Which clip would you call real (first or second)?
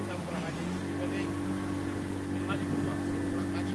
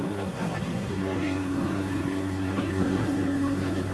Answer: first